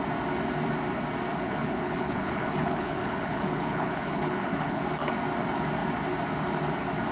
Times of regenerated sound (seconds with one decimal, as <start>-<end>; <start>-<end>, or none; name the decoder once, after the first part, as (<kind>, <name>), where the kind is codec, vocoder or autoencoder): 1.3-4.8 (codec, HILCodec)